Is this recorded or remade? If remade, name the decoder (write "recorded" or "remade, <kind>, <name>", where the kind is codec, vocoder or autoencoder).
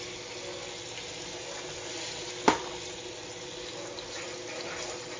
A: recorded